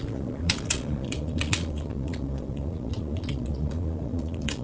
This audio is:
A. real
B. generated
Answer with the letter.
B